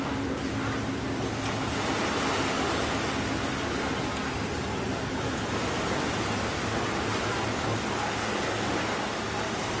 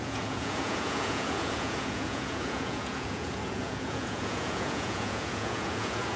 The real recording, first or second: first